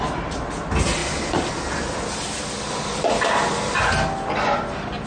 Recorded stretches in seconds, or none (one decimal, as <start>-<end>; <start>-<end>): 0.0-5.1